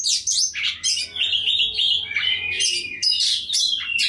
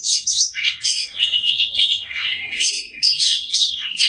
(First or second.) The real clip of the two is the first